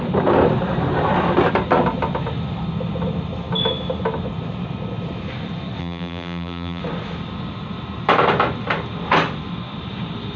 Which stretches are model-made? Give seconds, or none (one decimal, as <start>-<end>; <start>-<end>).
5.8-6.8